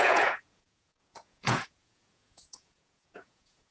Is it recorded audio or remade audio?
remade